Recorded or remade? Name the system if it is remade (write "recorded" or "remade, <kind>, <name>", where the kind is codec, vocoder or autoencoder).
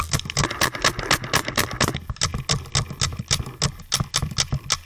recorded